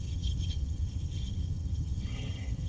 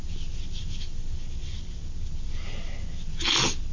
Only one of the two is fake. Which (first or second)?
first